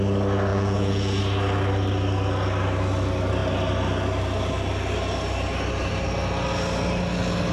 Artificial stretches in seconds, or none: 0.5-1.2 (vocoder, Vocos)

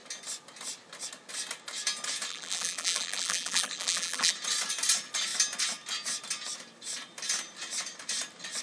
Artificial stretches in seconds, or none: 2.3-4.3 (vocoder, BigVGAN v2)

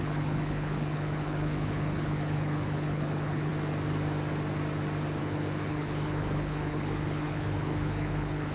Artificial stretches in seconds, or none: 0.0-3.5 (codec, HILCodec); 5.2-8.5

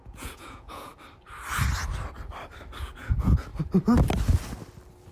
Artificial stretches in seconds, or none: 0.0-0.9 (vocoder, Vocos); 2.8-3.5

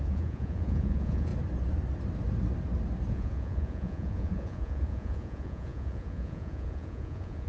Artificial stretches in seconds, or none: 0.0-1.3 (vocoder, Vocos); 3.1-7.5